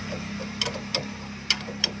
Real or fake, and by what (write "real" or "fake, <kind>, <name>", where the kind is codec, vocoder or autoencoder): fake, vocoder, BigVGAN v2